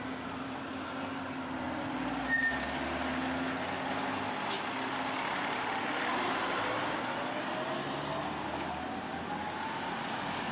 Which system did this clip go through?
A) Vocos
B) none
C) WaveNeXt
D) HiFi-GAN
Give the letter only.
B